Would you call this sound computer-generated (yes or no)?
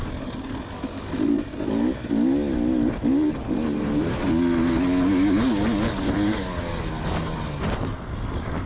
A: no